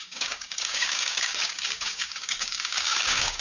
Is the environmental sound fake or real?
fake